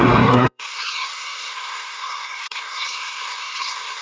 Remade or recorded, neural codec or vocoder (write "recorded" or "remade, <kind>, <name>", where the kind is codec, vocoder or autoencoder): remade, codec, SNAC